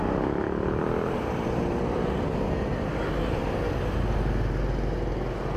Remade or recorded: recorded